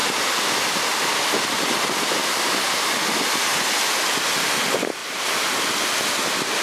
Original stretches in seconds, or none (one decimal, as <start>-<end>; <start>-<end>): 0.0-6.6